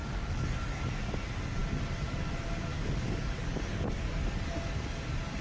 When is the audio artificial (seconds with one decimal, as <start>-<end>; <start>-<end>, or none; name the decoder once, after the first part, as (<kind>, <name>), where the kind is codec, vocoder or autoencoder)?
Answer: 0.0-0.8 (codec, DAC); 2.7-4.5